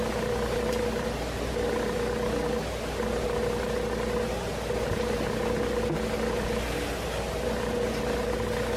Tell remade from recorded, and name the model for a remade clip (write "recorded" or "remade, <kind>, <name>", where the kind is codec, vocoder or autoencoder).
recorded